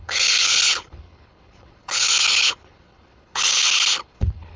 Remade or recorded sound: remade